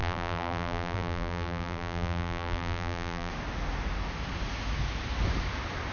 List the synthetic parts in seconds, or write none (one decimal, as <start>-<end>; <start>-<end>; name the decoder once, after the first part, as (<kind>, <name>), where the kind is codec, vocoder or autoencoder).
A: 0.0-3.3 (vocoder, BigVGAN v2)